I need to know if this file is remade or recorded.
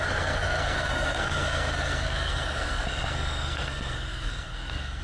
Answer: remade